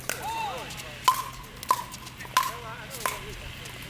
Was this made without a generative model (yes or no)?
yes